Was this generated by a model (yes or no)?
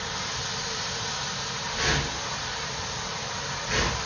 no